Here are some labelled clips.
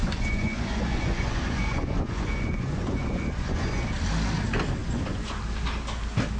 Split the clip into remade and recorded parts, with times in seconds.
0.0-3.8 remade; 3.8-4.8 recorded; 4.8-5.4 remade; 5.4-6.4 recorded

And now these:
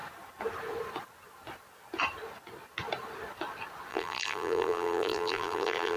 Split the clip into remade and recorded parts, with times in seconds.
0.0-3.9 recorded; 3.9-6.0 remade

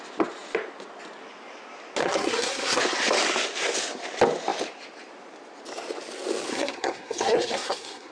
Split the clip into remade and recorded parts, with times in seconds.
0.0-2.0 recorded; 2.0-2.8 remade; 2.8-6.5 recorded; 6.5-8.1 remade

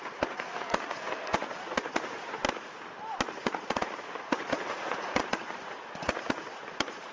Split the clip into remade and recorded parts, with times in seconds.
0.0-2.4 remade; 2.4-3.4 recorded; 3.4-7.1 remade

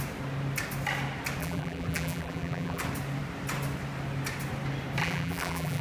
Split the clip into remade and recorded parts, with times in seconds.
0.0-1.4 recorded; 1.4-2.8 remade; 2.8-5.0 recorded; 5.0-5.8 remade